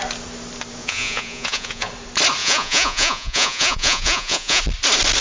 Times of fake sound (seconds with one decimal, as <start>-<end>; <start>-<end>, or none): 0.8-1.9; 2.4-4.6